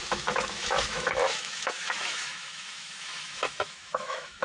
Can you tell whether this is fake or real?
fake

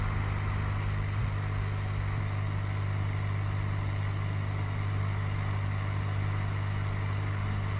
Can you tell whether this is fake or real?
real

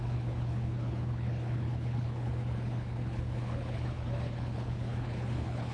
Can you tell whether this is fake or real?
fake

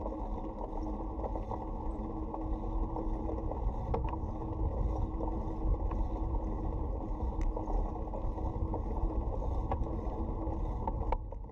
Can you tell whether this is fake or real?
real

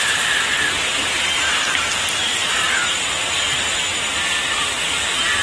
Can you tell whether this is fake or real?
real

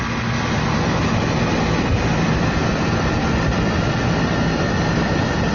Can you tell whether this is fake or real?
real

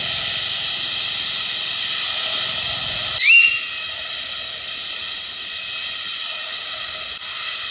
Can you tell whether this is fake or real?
real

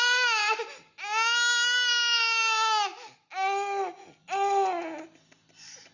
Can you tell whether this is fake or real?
real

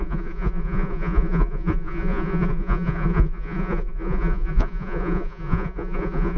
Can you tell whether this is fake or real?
fake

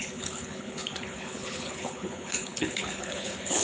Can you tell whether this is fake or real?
fake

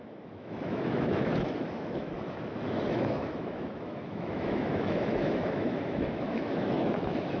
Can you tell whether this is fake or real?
fake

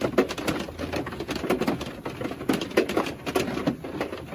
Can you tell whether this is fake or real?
real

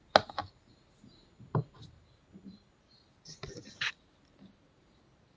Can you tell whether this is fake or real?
real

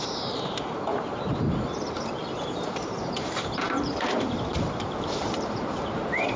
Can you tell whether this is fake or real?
fake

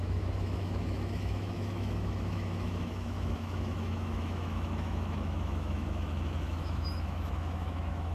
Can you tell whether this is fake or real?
fake